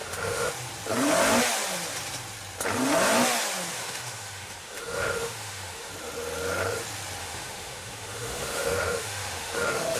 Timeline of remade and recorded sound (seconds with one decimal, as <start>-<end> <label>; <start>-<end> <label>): 0.0-0.5 remade; 0.5-3.7 recorded; 3.7-5.9 remade; 5.9-7.2 recorded; 7.2-10.0 remade

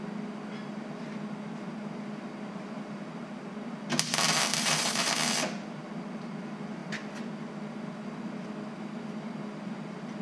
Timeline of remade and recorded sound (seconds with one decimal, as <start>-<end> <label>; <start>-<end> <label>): 0.0-4.5 recorded; 4.5-5.1 remade; 5.1-10.2 recorded

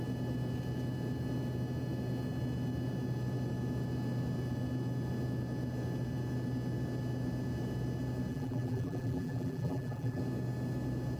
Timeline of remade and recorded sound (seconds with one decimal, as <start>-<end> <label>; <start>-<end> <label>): 0.0-8.3 recorded; 8.3-10.2 remade; 10.2-11.2 recorded

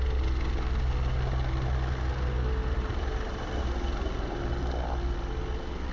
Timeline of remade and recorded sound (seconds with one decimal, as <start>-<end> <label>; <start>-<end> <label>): 0.0-2.6 recorded; 2.6-3.6 remade; 3.6-5.9 recorded

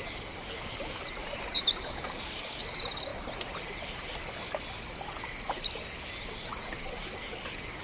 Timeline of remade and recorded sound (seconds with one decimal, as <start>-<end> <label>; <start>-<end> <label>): 0.0-1.2 recorded; 1.2-2.4 remade; 2.4-7.8 recorded

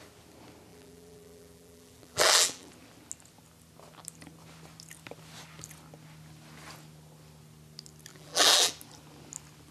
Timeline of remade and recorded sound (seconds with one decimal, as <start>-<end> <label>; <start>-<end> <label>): 0.0-0.7 recorded; 0.7-2.7 remade; 2.7-8.1 recorded; 8.1-8.7 remade; 8.7-9.7 recorded